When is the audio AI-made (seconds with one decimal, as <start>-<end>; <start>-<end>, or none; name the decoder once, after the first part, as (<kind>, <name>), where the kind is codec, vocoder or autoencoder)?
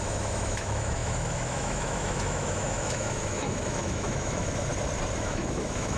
0.0-4.7 (autoencoder, DAC-VAE); 5.2-6.0